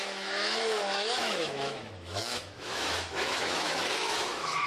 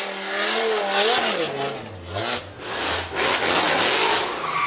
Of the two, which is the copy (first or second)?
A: first